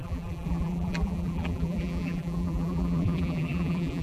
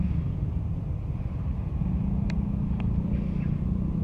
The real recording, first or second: second